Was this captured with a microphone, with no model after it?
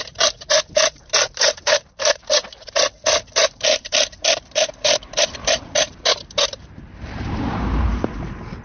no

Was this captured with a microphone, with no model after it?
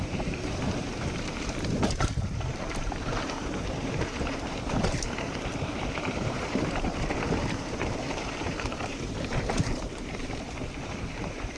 no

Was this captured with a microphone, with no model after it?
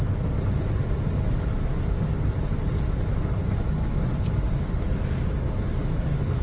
yes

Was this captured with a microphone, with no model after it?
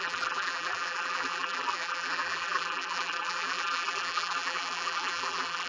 no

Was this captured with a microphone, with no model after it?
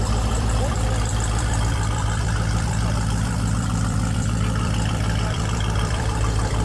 no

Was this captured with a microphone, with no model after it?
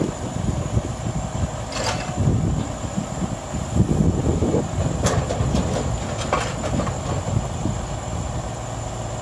yes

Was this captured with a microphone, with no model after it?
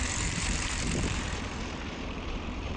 no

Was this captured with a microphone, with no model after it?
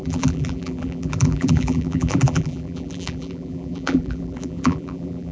no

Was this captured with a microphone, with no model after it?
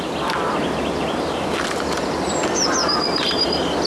yes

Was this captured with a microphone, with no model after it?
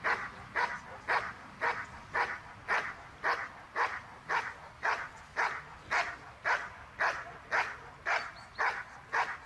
yes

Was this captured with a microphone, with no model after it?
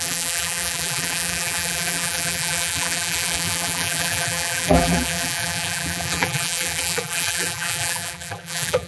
no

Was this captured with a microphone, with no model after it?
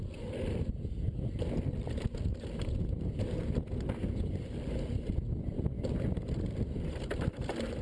yes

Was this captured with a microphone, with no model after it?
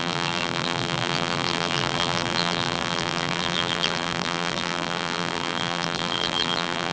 no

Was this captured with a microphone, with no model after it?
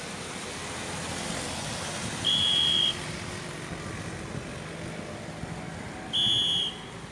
yes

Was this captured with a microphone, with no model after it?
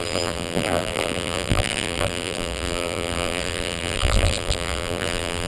no